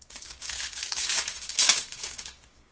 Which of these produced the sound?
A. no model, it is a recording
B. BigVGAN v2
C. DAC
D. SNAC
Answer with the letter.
C